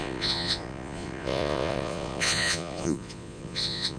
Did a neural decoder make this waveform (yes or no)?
yes